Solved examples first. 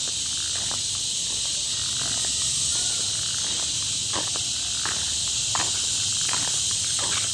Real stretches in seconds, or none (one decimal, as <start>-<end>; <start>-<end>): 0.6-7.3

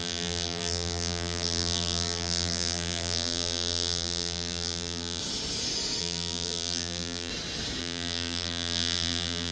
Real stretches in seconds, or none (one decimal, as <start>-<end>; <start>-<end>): 5.2-6.0; 7.3-7.8

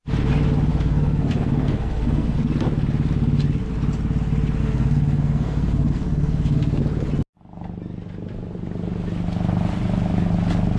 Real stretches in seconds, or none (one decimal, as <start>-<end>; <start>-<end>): 0.0-0.7; 2.4-4.6; 6.8-10.8